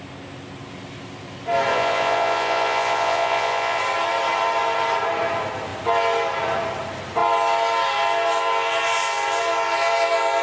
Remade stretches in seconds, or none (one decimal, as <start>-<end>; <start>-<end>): 1.7-3.8